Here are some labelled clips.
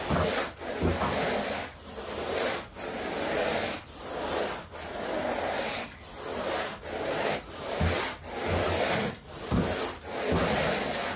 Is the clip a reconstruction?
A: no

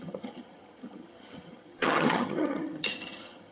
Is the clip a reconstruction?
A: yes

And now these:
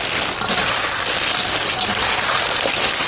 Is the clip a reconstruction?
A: no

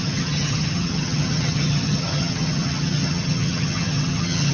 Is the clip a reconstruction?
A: yes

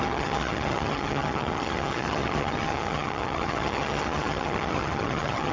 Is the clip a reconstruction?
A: yes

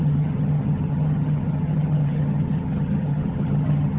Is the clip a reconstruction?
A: yes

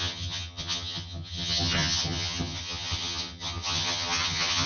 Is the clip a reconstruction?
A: yes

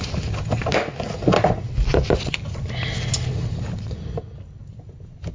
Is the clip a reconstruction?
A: no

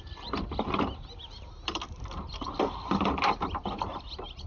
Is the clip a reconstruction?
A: no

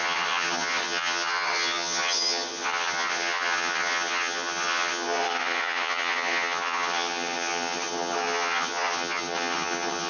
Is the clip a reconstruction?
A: yes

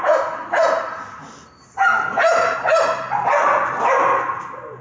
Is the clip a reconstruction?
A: no